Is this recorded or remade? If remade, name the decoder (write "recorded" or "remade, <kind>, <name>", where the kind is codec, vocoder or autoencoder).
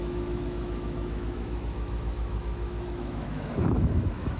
remade, autoencoder, DAC-VAE